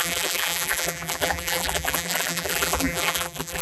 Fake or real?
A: fake